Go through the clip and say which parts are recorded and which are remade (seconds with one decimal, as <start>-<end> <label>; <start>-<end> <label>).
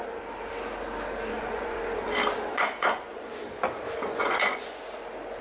0.0-1.3 recorded; 1.3-1.8 remade; 1.8-2.5 recorded; 2.5-3.3 remade; 3.3-4.1 recorded; 4.1-4.8 remade; 4.8-5.4 recorded